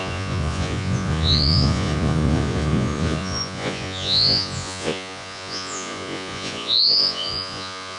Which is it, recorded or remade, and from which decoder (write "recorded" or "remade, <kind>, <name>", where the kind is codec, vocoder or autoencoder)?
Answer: remade, vocoder, Vocos